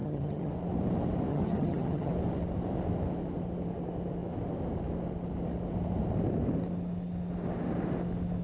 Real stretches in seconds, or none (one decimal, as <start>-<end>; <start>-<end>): 0.5-1.3; 2.1-8.4